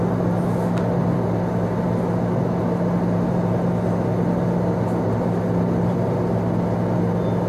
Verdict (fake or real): real